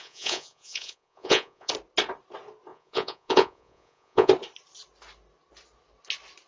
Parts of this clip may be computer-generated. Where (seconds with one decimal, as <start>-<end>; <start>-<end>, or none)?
0.0-1.7; 2.7-4.3